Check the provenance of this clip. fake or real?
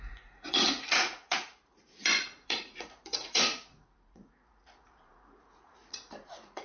fake